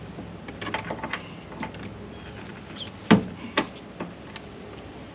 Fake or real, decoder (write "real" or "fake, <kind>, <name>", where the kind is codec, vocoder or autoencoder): real